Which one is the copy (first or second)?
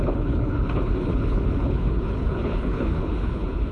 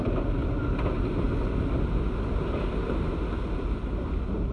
first